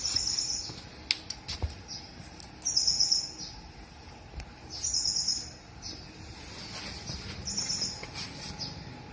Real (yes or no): yes